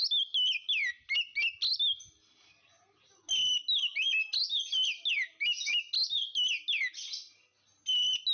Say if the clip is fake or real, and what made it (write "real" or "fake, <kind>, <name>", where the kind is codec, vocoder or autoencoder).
real